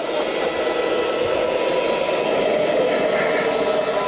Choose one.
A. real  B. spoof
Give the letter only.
A